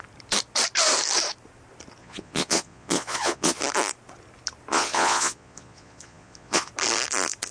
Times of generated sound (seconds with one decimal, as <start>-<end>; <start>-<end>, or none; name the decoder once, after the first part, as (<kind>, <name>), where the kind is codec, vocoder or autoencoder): 2.0-3.6 (vocoder, Vocos); 4.7-6.7